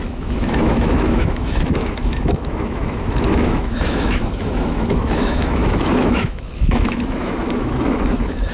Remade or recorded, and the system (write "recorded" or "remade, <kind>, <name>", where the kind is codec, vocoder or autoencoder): remade, autoencoder, DAC-VAE